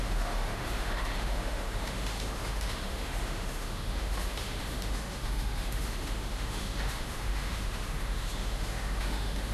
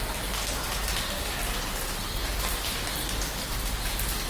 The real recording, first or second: second